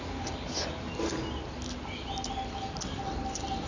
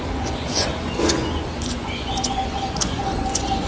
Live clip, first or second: first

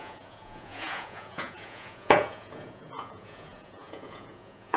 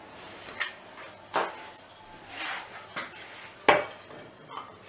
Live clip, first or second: second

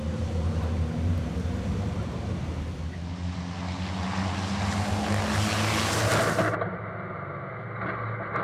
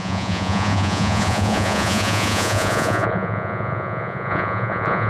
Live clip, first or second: first